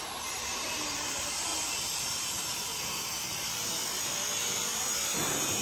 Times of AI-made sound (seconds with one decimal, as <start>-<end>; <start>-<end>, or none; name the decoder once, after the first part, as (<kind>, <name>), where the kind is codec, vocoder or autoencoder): 0.0-2.7 (vocoder, BigVGAN v2)